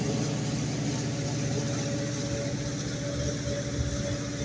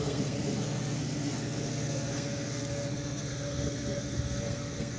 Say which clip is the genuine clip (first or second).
first